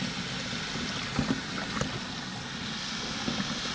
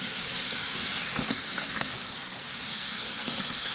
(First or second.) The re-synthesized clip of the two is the second